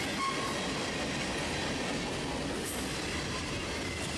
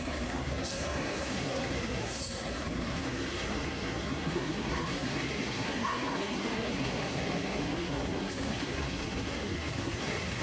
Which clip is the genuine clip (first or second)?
first